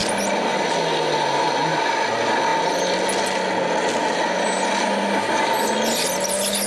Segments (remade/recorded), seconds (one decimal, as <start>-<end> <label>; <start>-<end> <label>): 0.0-6.7 recorded